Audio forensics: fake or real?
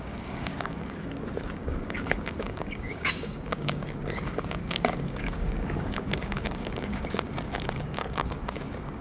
fake